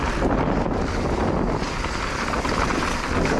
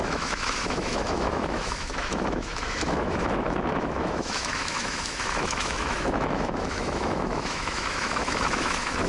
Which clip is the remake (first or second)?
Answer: second